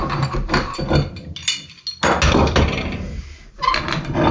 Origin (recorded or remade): recorded